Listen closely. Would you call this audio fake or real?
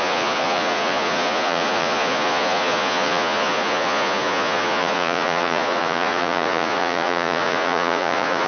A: fake